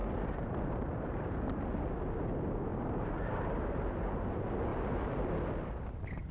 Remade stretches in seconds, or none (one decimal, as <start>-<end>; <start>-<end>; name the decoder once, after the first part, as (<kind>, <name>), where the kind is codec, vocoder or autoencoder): 2.7-3.7 (vocoder, BigVGAN v2); 4.7-5.3